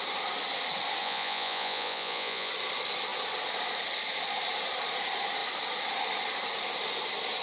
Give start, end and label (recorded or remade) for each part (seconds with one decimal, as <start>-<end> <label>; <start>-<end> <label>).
0.0-1.0 recorded; 1.0-2.5 remade; 2.5-7.4 recorded